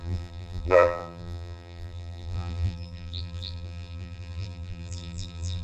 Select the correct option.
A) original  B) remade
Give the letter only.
B